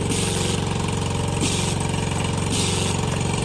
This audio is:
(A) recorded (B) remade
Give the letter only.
A